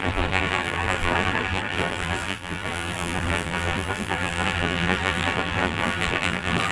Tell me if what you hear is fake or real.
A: fake